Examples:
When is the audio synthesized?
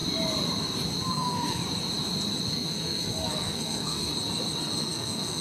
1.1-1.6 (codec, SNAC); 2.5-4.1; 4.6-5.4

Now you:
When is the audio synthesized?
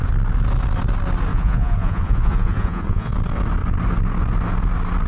1.3-3.1 (vocoder, Vocos)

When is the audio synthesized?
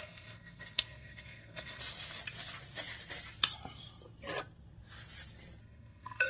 0.0-1.8 (codec, SNAC); 5.6-6.3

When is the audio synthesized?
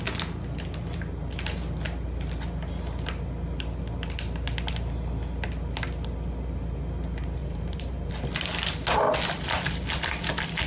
7.4-8.1 (vocoder, BigVGAN v2)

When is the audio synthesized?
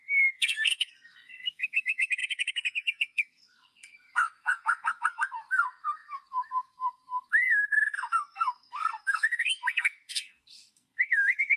0.0-11.6 (codec, SNAC)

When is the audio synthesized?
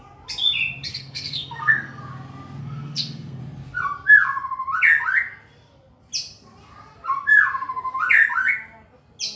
0.9-2.0 (codec, SNAC); 2.6-3.4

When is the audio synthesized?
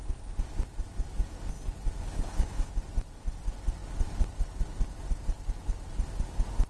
2.0-2.7 (codec, HILCodec)